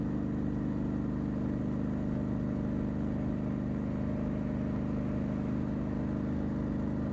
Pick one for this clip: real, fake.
real